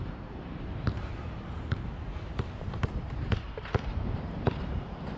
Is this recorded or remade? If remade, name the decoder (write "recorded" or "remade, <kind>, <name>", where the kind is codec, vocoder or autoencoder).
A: remade, vocoder, BigVGAN v2